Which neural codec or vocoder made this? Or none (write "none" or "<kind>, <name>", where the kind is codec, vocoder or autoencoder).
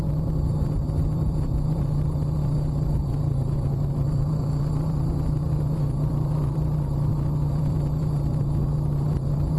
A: vocoder, BigVGAN v2